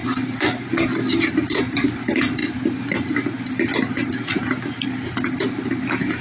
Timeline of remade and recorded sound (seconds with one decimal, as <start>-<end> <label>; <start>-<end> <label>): 0.0-6.2 recorded